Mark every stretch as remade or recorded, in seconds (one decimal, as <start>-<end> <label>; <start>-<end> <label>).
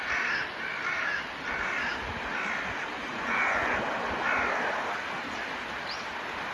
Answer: 0.0-3.1 recorded; 3.1-3.7 remade; 3.7-6.5 recorded